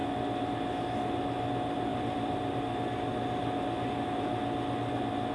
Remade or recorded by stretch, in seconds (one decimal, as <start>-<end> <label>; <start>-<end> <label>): 0.0-1.9 recorded; 1.9-2.6 remade; 2.6-5.3 recorded